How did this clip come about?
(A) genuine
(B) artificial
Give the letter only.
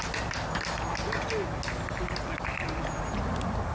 A